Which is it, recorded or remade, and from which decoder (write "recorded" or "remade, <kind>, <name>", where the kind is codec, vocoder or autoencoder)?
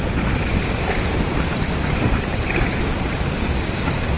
recorded